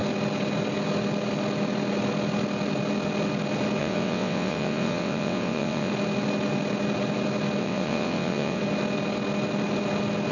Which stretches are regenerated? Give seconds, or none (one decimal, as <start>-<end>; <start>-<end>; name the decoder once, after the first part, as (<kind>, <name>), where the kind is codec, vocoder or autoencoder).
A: 3.8-5.9 (vocoder, WaveNeXt); 7.6-8.6